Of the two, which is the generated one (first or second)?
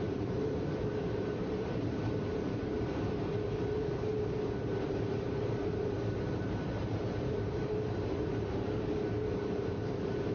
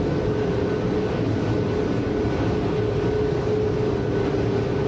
first